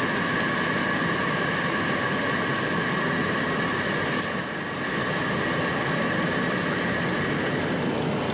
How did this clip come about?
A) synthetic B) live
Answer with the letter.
B